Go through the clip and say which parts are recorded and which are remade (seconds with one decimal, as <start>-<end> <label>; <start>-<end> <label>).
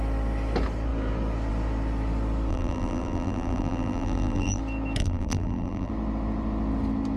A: 0.0-2.5 recorded; 2.5-4.6 remade; 4.6-5.0 recorded; 5.0-5.9 remade; 5.9-7.2 recorded